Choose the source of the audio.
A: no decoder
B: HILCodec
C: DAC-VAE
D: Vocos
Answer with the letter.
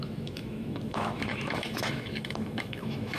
C